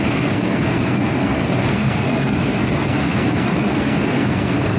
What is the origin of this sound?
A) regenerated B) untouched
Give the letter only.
A